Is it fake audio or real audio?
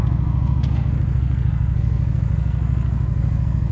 fake